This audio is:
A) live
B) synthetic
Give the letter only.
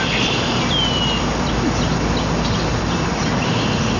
A